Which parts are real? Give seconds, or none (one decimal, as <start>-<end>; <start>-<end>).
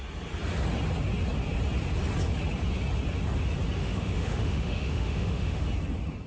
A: 0.0-3.8; 5.6-6.3